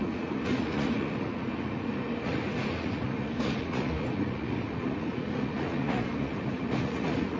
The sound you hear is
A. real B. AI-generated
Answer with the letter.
B